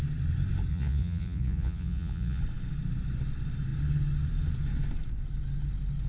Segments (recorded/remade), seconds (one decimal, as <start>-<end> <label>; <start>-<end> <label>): 0.0-0.7 recorded; 0.7-2.4 remade; 2.4-6.1 recorded